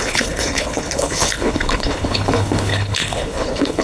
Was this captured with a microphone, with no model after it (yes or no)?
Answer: no